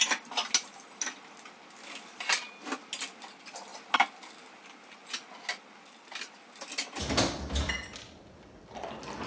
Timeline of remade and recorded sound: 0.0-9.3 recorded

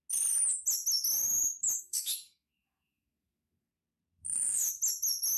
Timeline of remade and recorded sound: 0.0-1.2 recorded; 1.2-3.7 remade; 3.7-4.2 recorded; 4.2-4.7 remade; 4.7-5.4 recorded

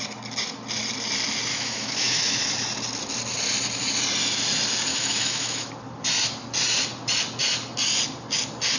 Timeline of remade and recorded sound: 0.0-1.5 recorded; 1.5-2.4 remade; 2.4-4.9 recorded; 4.9-5.7 remade; 5.7-8.8 recorded